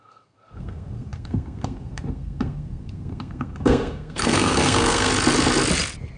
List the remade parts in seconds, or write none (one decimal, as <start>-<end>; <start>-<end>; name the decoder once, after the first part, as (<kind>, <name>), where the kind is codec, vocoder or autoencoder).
0.0-5.1 (codec, SNAC)